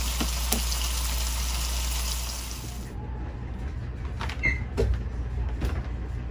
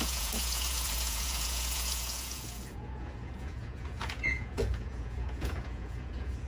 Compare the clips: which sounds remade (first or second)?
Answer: second